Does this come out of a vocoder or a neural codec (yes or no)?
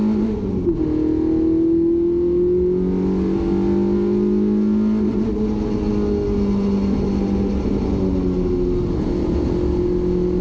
no